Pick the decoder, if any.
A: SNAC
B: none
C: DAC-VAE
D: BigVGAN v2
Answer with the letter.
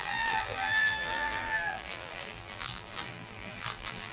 D